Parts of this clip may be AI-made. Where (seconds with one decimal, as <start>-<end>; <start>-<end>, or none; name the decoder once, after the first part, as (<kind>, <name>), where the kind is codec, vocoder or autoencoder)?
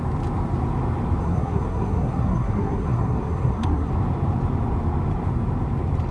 1.2-3.9 (codec, SNAC)